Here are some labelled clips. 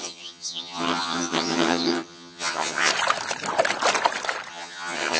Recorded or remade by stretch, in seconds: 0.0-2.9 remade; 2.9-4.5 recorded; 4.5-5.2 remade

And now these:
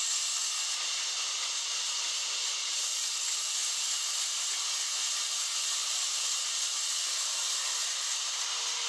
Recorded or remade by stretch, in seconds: 0.0-8.9 recorded

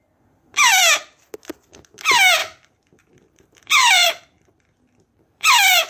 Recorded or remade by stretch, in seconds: 0.0-2.4 recorded; 2.4-5.9 remade

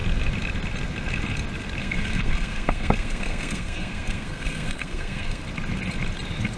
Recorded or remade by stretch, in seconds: 0.0-1.8 recorded; 1.8-5.4 remade; 5.4-6.6 recorded

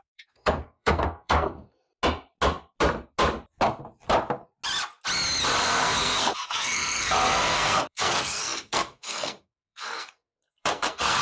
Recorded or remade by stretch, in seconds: 0.0-1.9 remade; 1.9-5.6 recorded; 5.6-11.2 remade

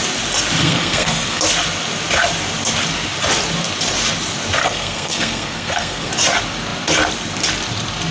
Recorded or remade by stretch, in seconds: 0.0-0.6 recorded; 0.6-1.4 remade; 1.4-4.6 recorded; 4.6-6.1 remade; 6.1-8.1 recorded

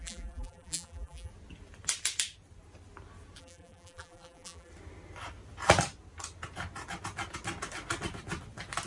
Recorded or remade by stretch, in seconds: 0.0-1.3 remade; 1.3-3.4 recorded; 3.4-4.7 remade; 4.7-8.9 recorded

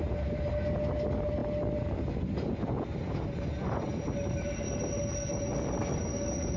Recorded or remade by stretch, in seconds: 0.0-6.6 recorded